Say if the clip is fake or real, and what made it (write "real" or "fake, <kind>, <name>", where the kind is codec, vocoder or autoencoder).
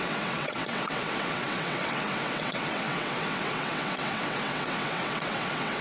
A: fake, vocoder, WaveNeXt